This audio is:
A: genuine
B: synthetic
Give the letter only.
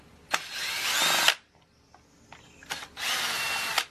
A